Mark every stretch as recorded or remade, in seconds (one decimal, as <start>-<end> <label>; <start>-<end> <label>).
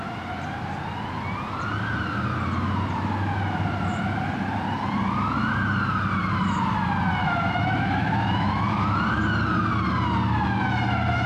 0.0-7.2 recorded; 7.2-9.0 remade; 9.0-11.3 recorded